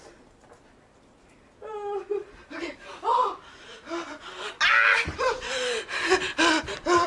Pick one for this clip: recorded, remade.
recorded